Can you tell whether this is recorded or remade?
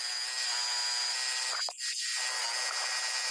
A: recorded